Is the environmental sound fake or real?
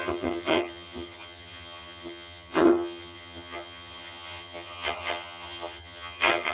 fake